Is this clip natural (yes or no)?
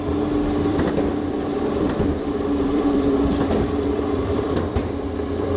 no